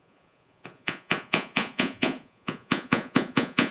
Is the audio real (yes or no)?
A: no